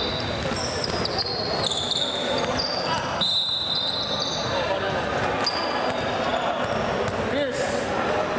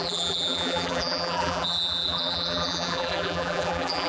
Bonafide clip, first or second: first